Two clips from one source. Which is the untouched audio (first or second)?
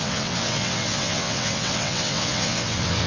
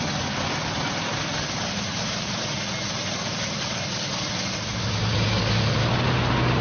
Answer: second